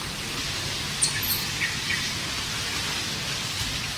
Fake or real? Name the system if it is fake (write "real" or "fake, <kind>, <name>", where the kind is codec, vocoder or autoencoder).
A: real